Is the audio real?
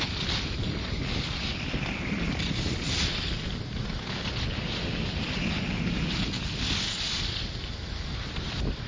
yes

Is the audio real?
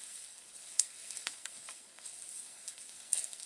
no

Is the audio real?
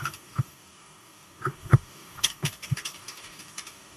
no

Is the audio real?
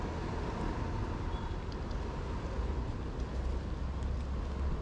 yes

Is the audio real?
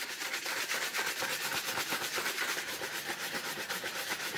no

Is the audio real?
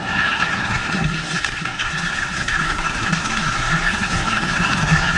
no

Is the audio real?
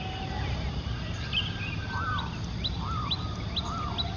yes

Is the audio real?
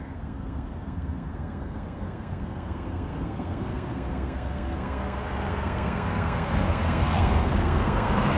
no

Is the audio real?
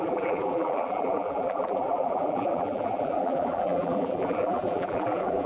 no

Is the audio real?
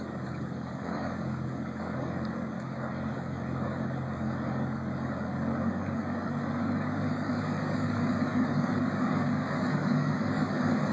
no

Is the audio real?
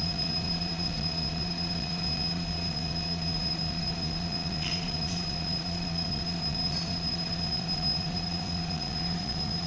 no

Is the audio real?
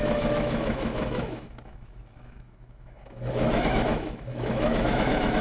no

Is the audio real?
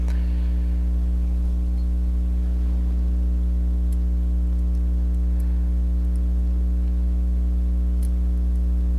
yes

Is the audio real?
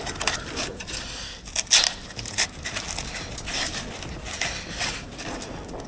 yes